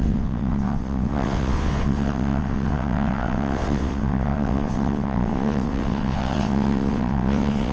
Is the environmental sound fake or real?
fake